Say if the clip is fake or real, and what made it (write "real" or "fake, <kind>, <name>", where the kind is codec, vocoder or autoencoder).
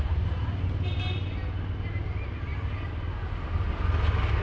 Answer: real